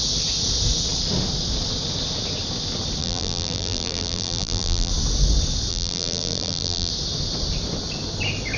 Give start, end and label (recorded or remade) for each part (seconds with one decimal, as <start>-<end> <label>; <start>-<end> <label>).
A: 0.0-3.0 recorded; 3.0-4.9 remade; 4.9-5.7 recorded; 5.7-6.9 remade; 6.9-8.6 recorded